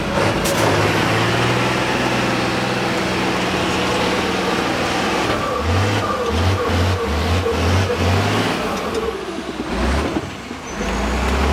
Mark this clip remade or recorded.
recorded